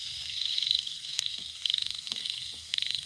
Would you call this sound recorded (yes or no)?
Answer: no